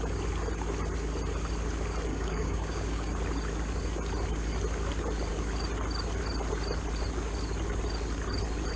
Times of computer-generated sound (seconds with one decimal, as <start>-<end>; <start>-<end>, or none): 2.1-3.1